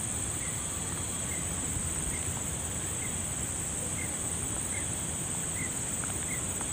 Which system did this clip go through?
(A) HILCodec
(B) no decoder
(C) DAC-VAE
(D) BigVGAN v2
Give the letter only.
B